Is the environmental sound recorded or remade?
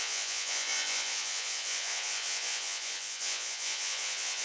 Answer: remade